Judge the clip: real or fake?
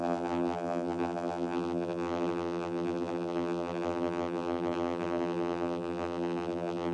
fake